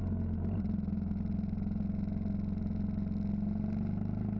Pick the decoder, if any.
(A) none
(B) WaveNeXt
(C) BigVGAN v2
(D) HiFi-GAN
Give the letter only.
A